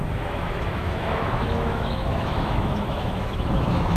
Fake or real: fake